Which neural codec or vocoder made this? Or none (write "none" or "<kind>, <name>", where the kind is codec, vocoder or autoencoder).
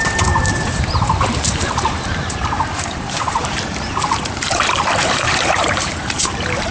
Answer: vocoder, BigVGAN v2